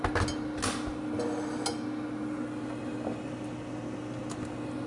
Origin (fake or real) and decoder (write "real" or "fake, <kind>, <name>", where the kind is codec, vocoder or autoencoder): real